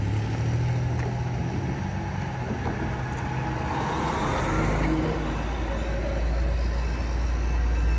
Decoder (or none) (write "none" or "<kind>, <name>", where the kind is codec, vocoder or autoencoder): none